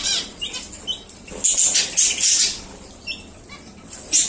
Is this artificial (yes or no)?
no